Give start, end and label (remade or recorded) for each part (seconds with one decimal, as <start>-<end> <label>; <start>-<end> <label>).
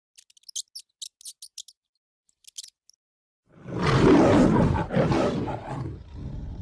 0.0-6.6 recorded